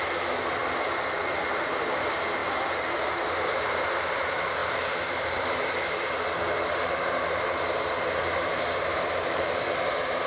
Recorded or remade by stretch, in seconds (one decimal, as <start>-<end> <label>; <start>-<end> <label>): 0.0-0.6 remade; 0.6-1.4 recorded; 1.4-10.3 remade